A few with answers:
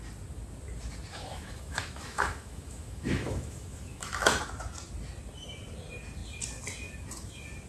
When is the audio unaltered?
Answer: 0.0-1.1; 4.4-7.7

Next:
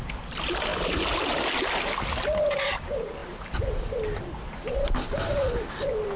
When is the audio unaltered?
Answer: 0.0-6.2

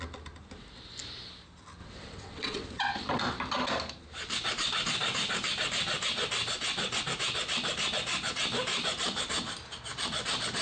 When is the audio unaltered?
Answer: 0.0-1.8; 2.8-10.6